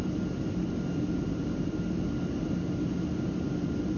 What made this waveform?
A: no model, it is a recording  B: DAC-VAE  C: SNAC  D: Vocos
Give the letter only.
A